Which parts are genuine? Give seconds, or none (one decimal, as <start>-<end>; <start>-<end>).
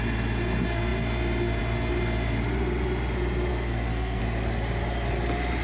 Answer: 0.0-3.5; 4.2-5.6